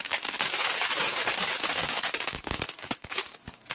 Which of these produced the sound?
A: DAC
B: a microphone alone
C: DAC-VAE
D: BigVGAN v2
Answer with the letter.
A